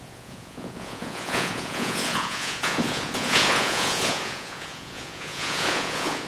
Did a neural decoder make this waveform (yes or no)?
yes